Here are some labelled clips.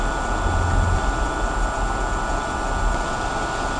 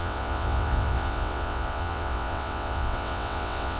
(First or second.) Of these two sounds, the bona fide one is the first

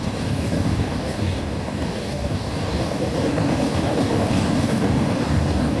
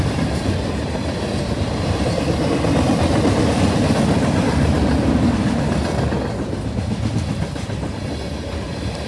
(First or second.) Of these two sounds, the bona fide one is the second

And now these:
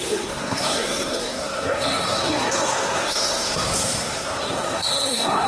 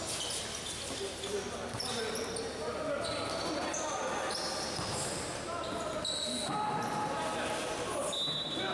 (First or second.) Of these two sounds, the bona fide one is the second